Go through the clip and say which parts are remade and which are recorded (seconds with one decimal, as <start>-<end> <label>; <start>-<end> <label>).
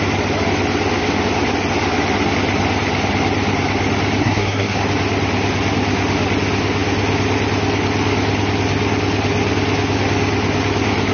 0.0-4.2 recorded; 4.2-4.8 remade; 4.8-11.1 recorded